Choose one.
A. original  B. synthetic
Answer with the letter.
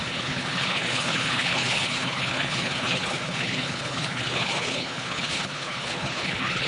B